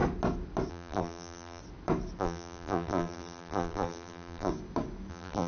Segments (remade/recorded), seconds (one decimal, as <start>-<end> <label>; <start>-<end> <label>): 0.0-0.7 recorded; 0.7-1.6 remade; 1.6-2.2 recorded; 2.2-4.5 remade; 4.5-5.1 recorded; 5.1-5.5 remade